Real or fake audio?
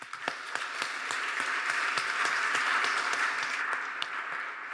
real